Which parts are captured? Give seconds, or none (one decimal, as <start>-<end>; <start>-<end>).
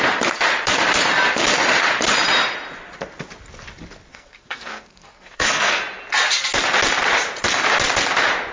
0.0-4.1; 5.8-8.5